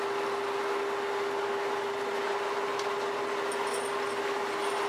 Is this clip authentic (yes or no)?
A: yes